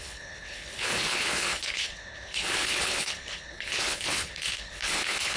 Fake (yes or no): yes